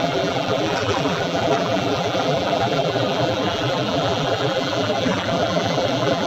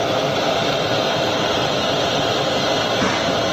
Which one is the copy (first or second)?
first